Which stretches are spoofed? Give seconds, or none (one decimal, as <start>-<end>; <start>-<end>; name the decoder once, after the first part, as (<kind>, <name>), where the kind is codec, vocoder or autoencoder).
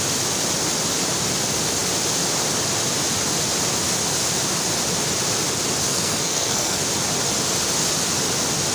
5.9-6.8 (codec, SNAC)